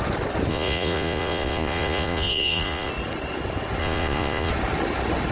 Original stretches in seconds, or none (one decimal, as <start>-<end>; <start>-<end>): 0.0-0.5; 2.9-3.8; 4.5-5.3